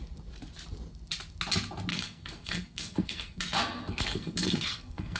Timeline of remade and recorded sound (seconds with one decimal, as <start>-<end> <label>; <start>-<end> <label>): 0.0-1.9 recorded; 1.9-5.2 remade